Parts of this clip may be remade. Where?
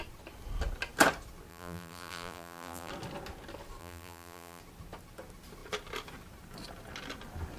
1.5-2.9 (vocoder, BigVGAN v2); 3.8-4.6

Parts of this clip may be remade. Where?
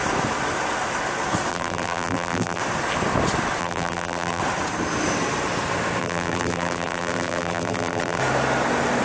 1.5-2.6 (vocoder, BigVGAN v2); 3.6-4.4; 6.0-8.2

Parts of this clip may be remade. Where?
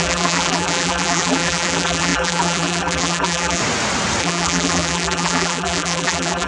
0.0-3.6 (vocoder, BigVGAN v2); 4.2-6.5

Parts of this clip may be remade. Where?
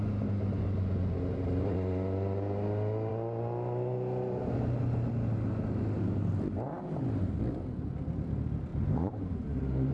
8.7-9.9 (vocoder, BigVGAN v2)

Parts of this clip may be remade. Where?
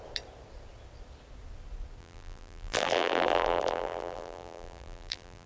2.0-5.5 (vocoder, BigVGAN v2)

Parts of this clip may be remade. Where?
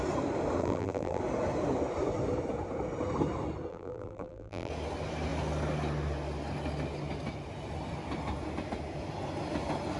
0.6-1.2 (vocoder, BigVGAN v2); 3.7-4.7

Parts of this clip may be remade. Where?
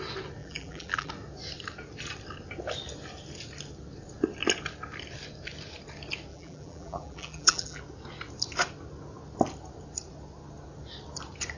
0.4-1.1 (vocoder, BigVGAN v2); 6.3-7.8